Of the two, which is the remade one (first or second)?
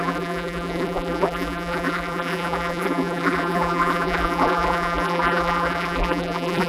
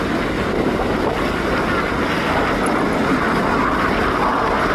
first